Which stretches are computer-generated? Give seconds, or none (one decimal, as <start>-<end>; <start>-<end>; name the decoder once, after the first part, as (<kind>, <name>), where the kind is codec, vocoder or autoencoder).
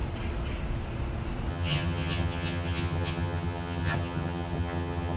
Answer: 1.5-5.2 (vocoder, HiFi-GAN)